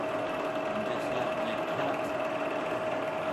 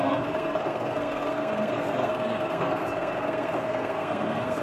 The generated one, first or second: second